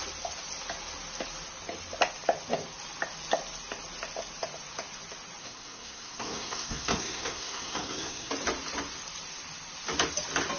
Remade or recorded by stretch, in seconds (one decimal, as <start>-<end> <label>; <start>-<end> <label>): 0.0-5.4 recorded; 5.4-8.3 remade; 8.3-10.6 recorded